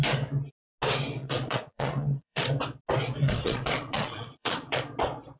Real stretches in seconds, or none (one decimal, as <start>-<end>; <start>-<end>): 0.0-1.2; 2.5-3.2; 4.8-5.4